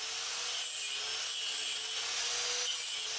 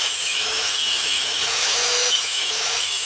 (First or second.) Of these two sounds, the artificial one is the second